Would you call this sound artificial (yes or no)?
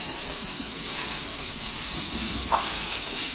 yes